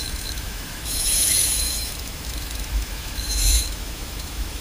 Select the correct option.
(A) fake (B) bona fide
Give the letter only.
A